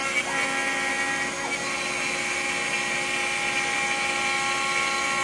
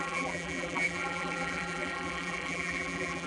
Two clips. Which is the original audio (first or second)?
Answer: first